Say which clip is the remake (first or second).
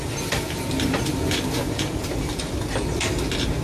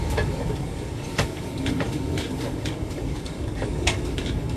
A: second